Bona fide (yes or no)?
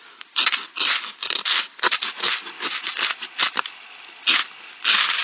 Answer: yes